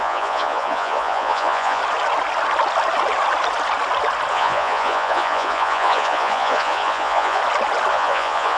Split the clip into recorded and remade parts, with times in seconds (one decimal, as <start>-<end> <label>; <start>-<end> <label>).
0.0-1.8 remade; 1.8-4.3 recorded; 4.3-7.4 remade; 7.4-7.9 recorded; 7.9-8.6 remade